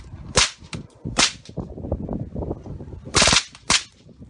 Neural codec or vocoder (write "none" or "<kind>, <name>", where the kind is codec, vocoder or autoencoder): vocoder, BigVGAN v2